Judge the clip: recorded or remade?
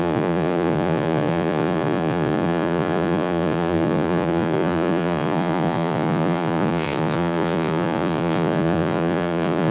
remade